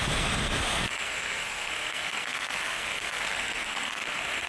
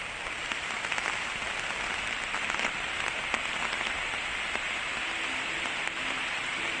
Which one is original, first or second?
second